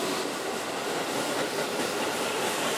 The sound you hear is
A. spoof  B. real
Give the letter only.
B